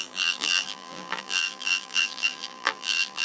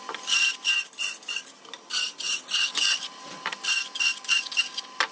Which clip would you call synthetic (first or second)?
first